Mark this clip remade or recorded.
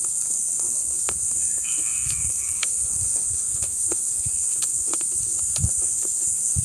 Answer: remade